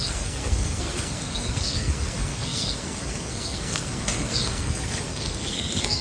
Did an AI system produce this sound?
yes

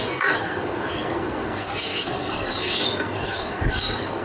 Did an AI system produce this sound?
yes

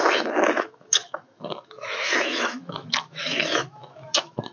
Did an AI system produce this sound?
yes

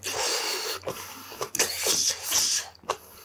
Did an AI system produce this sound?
no